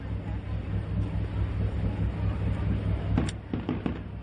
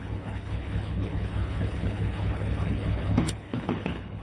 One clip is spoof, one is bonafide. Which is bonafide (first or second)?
first